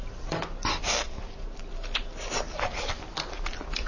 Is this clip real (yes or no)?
yes